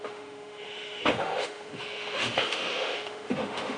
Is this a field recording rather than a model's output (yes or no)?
no